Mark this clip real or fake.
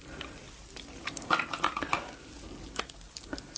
real